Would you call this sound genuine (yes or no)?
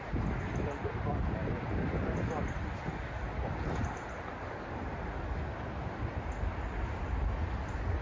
yes